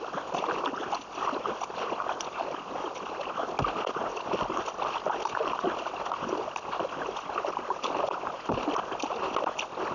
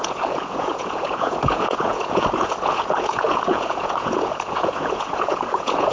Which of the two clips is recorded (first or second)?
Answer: first